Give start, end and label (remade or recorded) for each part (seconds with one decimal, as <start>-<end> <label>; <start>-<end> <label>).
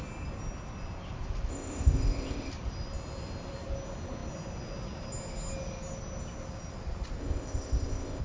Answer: 0.0-1.5 recorded; 1.5-2.5 remade; 2.5-7.2 recorded; 7.2-8.2 remade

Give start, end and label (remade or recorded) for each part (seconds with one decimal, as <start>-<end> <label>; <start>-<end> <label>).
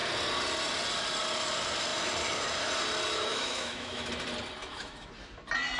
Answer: 0.0-3.3 recorded; 3.3-4.1 remade; 4.1-4.6 recorded; 4.6-5.1 remade; 5.1-5.8 recorded